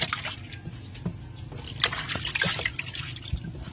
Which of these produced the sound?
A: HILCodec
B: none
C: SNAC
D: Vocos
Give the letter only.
B